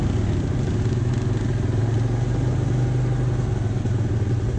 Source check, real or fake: real